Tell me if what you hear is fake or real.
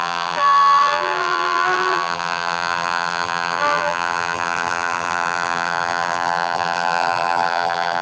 fake